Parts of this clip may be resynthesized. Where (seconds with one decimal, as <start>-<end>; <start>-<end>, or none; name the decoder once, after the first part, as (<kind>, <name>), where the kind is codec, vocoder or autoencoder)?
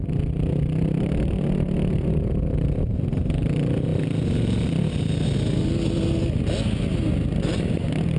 none